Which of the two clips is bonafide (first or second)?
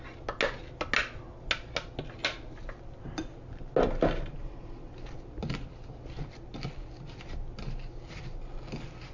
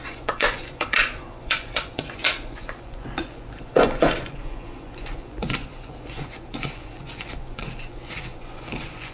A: first